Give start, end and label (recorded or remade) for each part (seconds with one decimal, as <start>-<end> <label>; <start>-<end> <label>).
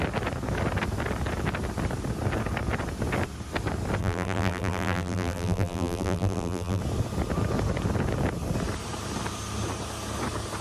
0.0-4.0 recorded; 4.0-6.8 remade; 6.8-10.6 recorded